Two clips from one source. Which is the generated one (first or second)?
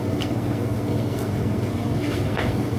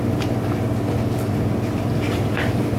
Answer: first